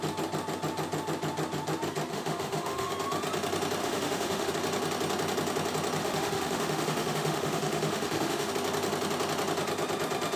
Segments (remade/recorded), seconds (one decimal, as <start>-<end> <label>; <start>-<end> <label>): 0.0-2.1 recorded; 2.1-2.9 remade; 2.9-3.8 recorded; 3.8-4.5 remade; 4.5-6.0 recorded; 6.0-8.5 remade; 8.5-10.4 recorded